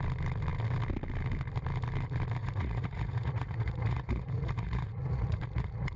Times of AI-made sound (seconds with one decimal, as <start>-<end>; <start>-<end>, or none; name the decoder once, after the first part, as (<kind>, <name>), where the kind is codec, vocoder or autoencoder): 2.4-6.0 (vocoder, Vocos)

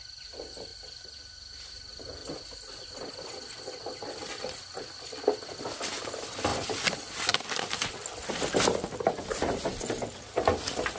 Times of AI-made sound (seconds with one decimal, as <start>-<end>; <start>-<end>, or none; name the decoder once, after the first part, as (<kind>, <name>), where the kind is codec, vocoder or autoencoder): none

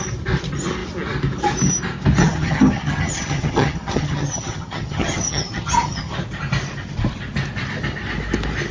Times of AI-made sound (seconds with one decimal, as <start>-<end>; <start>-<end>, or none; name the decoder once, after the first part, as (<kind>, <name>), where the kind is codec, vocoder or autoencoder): 2.2-6.1 (vocoder, HiFi-GAN)

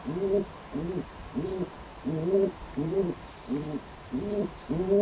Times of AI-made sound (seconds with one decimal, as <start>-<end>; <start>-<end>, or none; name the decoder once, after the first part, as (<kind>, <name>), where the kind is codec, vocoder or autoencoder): 1.1-4.1 (vocoder, BigVGAN v2)

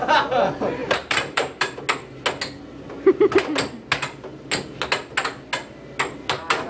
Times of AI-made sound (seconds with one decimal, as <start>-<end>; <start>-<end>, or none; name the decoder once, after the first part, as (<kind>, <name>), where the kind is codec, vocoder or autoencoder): 0.8-1.8 (vocoder, BigVGAN v2)

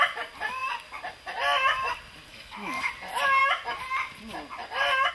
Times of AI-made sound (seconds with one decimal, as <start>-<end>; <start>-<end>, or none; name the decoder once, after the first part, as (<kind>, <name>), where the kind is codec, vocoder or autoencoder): 2.3-2.9 (codec, DAC)

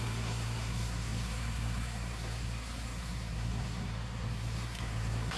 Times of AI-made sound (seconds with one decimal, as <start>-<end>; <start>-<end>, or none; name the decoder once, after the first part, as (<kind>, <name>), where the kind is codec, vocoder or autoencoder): 0.0-5.4 (codec, SNAC)

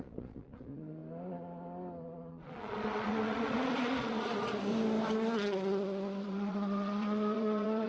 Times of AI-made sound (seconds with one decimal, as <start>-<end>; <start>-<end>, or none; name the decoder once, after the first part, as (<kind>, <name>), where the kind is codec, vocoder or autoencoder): 0.0-1.0 (vocoder, Vocos); 2.3-4.7; 6.2-7.9